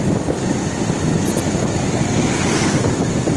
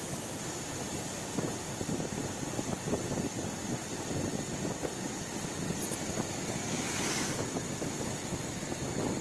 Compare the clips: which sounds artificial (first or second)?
first